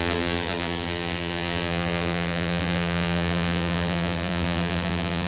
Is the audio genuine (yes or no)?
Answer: no